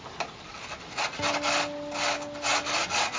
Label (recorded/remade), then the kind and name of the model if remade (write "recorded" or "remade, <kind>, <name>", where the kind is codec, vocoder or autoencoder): recorded